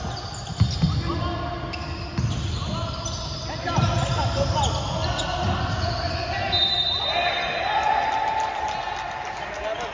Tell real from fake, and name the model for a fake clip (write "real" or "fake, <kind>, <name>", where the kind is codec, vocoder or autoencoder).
real